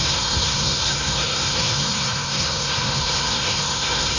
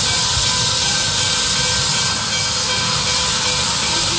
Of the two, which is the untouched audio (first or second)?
second